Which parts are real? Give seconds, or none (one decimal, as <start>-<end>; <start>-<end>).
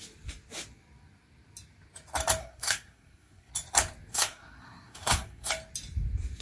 0.0-2.4; 3.5-4.1; 5.5-6.4